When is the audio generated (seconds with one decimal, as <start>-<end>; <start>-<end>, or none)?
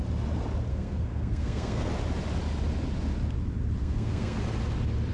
0.7-1.9; 3.8-4.4